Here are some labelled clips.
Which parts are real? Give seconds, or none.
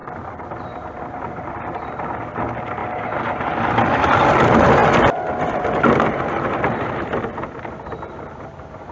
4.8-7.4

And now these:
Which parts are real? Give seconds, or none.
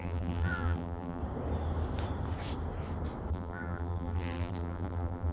1.2-3.3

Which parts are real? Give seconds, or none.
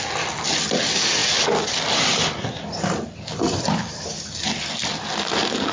0.0-1.2; 4.6-5.7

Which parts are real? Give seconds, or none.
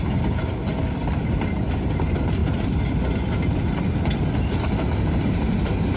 0.0-6.0